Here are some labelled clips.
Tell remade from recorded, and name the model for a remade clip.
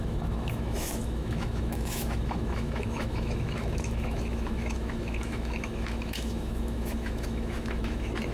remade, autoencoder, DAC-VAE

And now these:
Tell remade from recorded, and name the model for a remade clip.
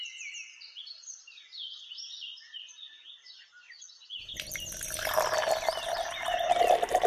recorded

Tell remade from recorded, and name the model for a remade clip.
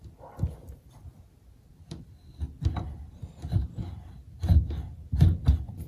recorded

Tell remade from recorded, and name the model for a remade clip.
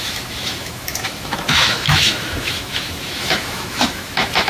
remade, autoencoder, DAC-VAE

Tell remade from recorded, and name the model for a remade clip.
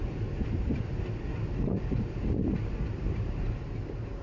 recorded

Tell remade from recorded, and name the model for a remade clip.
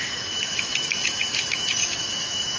remade, autoencoder, DAC-VAE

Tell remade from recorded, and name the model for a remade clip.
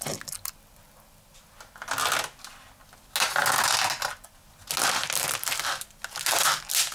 recorded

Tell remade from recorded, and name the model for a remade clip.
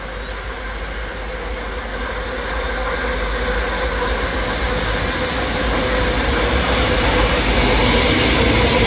recorded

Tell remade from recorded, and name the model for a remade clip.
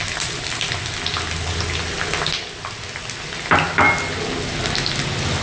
recorded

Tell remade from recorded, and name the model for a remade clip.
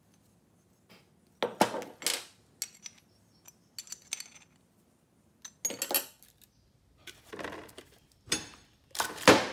recorded